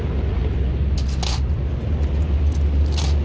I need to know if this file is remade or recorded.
recorded